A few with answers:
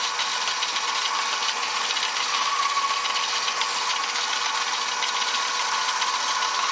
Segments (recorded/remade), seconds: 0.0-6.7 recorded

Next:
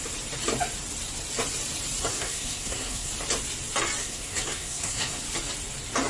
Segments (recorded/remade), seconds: 0.0-2.1 recorded; 2.1-3.1 remade; 3.1-4.0 recorded; 4.0-5.2 remade; 5.2-6.1 recorded

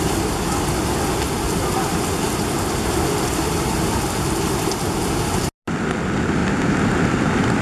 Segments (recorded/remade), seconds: 0.0-7.6 recorded

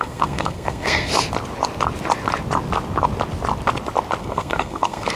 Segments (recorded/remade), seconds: 0.0-1.1 remade; 1.1-4.2 recorded; 4.2-5.2 remade

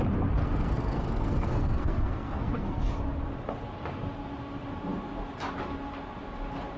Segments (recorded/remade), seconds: 0.0-0.4 recorded; 0.4-2.9 remade; 2.9-6.8 recorded